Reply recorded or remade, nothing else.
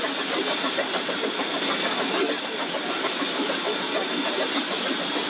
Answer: recorded